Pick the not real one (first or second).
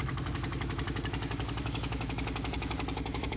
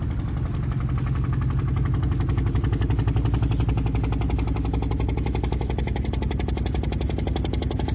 first